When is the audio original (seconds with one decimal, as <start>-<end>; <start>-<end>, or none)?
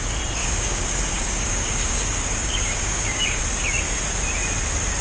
0.0-0.4; 3.4-5.0